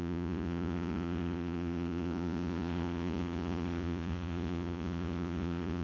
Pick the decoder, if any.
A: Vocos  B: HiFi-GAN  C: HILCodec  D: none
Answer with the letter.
A